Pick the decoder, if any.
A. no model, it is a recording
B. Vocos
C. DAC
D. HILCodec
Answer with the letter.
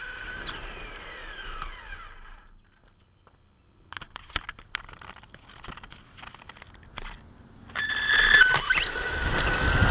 A